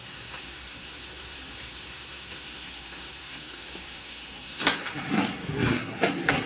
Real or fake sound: fake